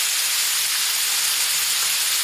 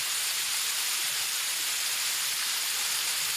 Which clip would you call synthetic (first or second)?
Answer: second